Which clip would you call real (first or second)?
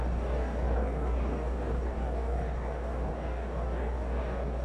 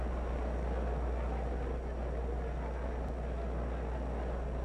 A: second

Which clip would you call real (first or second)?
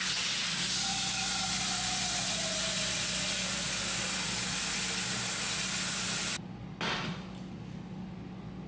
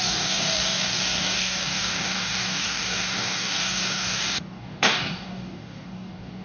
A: first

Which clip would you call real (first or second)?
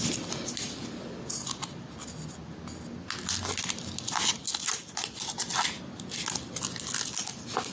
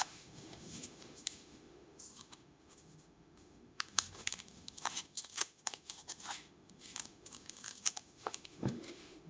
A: first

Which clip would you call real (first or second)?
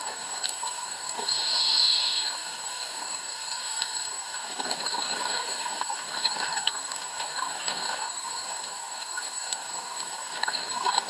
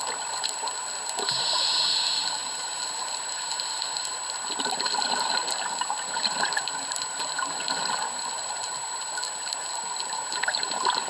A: second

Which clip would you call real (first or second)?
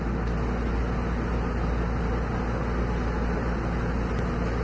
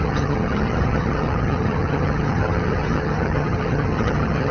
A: first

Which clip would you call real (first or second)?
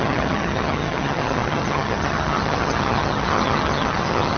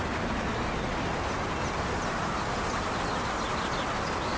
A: second